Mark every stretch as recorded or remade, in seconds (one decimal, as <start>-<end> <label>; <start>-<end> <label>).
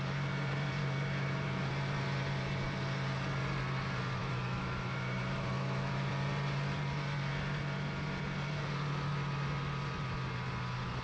0.0-0.8 recorded; 0.8-1.7 remade; 1.7-4.2 recorded; 4.2-6.1 remade; 6.1-11.0 recorded